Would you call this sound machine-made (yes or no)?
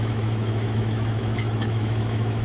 yes